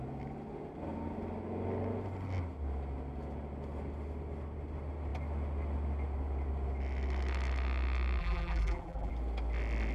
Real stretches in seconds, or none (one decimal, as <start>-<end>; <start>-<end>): 0.0-8.2; 9.1-9.9